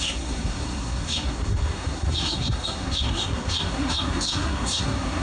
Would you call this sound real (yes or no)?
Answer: no